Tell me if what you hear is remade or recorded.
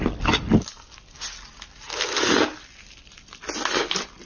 recorded